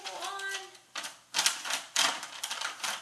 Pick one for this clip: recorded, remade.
recorded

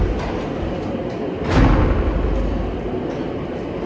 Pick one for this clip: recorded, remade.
recorded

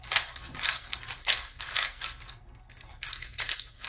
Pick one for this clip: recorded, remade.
remade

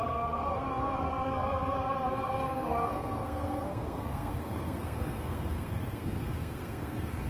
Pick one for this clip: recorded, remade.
remade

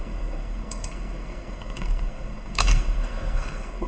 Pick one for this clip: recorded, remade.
remade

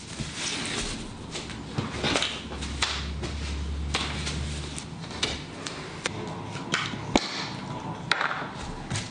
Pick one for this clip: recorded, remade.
recorded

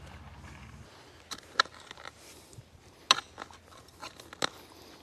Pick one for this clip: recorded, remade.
recorded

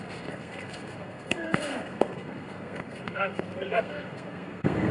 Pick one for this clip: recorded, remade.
remade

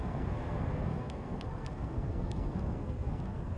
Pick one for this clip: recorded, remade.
remade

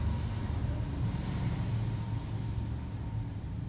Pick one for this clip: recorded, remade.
recorded